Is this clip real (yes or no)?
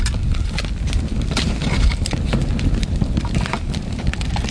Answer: yes